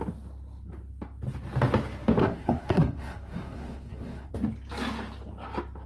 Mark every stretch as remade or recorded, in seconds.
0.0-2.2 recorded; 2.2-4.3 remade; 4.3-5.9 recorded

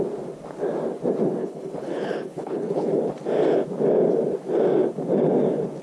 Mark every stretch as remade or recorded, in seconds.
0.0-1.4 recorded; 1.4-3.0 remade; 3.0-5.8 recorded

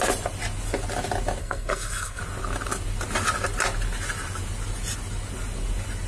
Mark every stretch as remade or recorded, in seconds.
0.0-1.4 recorded; 1.4-2.2 remade; 2.2-6.1 recorded

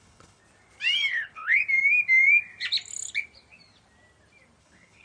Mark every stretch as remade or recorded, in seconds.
0.0-0.4 remade; 0.4-1.1 recorded; 1.1-1.6 remade; 1.6-4.6 recorded; 4.6-5.0 remade

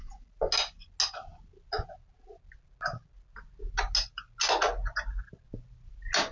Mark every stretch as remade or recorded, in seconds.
0.0-6.3 recorded